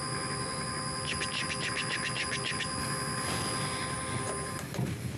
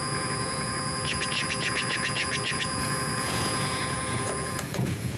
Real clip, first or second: first